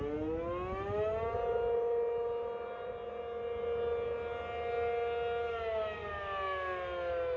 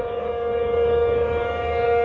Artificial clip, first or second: second